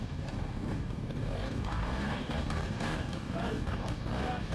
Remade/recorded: remade